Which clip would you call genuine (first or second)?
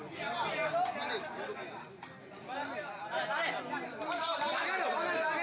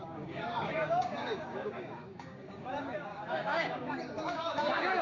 first